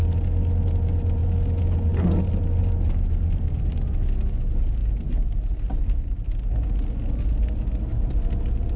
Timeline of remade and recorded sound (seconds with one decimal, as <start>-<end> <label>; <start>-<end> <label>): 0.0-8.8 recorded